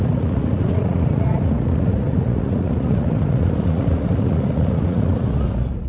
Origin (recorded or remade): remade